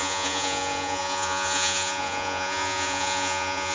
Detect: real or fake fake